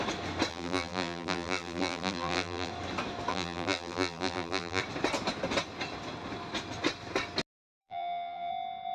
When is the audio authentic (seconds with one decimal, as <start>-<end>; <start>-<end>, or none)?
0.0-0.5; 2.7-3.3; 4.8-7.8; 8.5-8.9